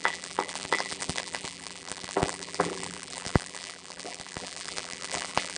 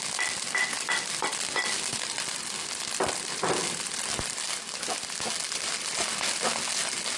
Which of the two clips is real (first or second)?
second